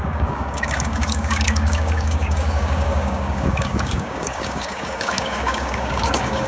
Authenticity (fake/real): fake